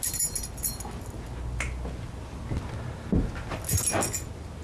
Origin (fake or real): real